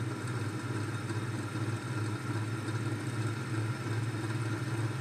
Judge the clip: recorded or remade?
recorded